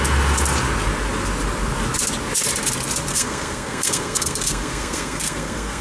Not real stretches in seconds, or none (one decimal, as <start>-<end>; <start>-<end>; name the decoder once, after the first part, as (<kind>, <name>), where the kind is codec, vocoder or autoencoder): 3.1-5.8 (codec, SNAC)

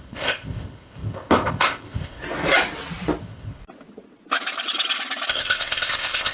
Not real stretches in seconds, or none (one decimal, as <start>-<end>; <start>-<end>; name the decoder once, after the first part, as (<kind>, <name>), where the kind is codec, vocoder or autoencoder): 0.0-2.2 (codec, ZipCodec); 3.2-3.6; 5.3-6.3

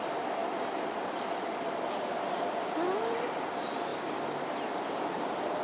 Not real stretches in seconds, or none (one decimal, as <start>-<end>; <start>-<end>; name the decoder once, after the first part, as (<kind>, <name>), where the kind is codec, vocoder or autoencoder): none